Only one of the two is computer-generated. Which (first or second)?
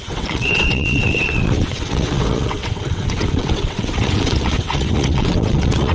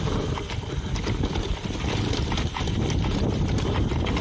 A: first